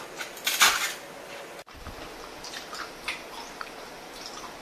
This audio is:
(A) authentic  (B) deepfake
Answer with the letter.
A